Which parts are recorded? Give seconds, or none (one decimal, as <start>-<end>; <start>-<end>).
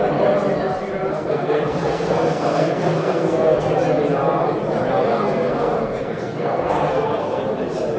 0.0-1.1; 3.7-5.1; 7.4-8.0